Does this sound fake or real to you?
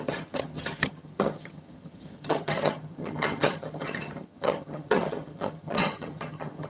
fake